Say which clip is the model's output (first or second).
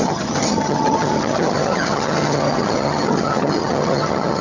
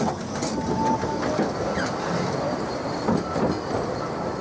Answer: first